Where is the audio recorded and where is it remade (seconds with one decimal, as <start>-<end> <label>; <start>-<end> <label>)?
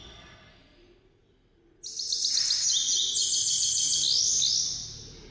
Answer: 0.0-5.3 recorded